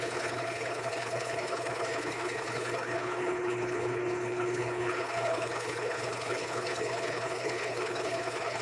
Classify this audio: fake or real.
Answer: fake